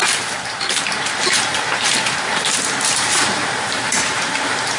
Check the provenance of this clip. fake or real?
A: fake